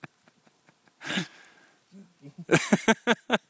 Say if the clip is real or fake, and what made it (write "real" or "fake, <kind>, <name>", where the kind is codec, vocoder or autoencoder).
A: real